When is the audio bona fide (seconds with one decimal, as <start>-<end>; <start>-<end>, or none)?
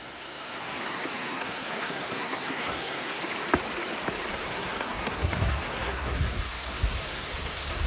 3.2-4.3